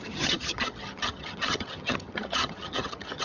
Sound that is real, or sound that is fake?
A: fake